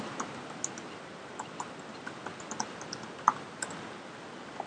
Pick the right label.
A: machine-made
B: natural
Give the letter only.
B